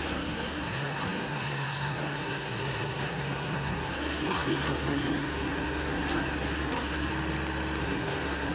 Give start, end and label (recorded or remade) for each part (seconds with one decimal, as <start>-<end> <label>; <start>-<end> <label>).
0.0-7.1 remade; 7.1-7.8 recorded; 7.8-8.5 remade